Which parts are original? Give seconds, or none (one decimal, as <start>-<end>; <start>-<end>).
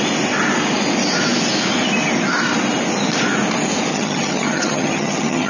0.0-3.9